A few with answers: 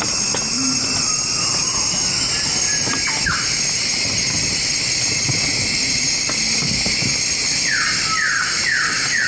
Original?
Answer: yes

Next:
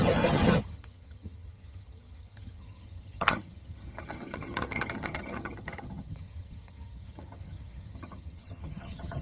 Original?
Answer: no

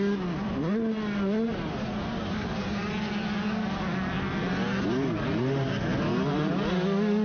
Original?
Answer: yes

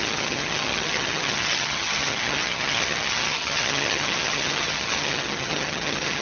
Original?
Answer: no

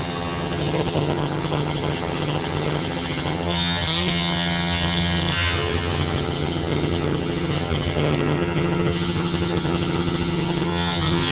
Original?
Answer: no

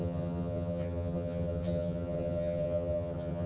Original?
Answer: no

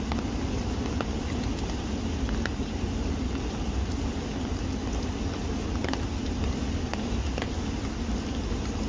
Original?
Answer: yes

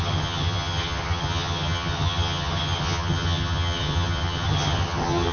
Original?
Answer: no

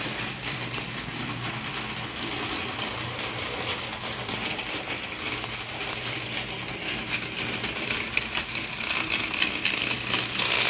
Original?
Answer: yes